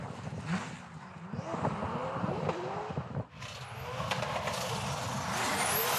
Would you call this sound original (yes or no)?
yes